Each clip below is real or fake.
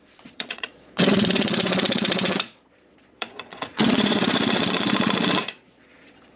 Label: fake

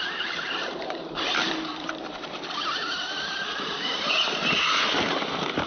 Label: fake